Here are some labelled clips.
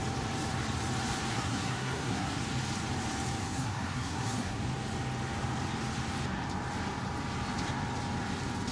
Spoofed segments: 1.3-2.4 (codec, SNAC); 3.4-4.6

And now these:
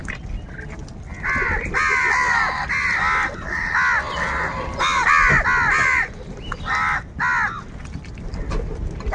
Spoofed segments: none

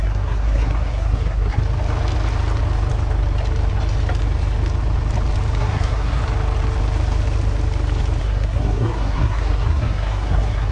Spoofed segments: 0.0-1.6 (codec, SNAC); 5.6-6.2; 8.2-10.7

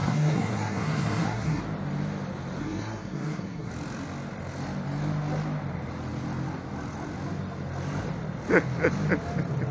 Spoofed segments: 0.0-1.6 (codec, SNAC); 2.6-3.7

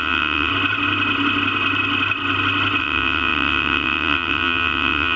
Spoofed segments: 0.0-0.5 (vocoder, WaveNeXt); 2.8-5.2

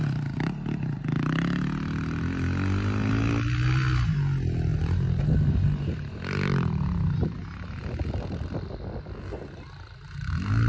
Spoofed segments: none

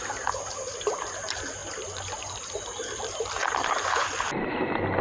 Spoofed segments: none

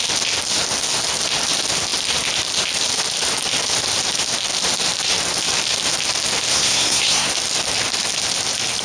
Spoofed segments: 6.5-7.3 (codec, SNAC)